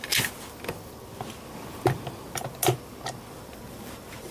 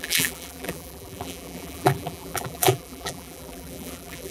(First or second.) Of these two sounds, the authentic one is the first